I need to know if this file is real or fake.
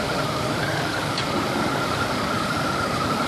fake